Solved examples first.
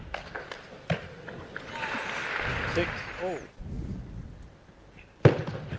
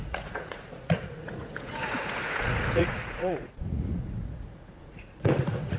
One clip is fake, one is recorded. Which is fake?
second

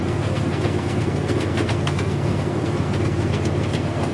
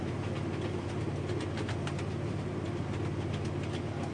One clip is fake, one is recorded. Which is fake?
first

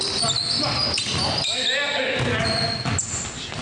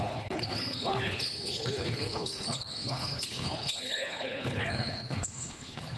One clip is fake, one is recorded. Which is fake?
second